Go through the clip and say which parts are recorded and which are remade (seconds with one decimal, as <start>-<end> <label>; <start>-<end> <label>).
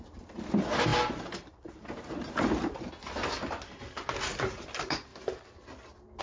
0.0-6.2 recorded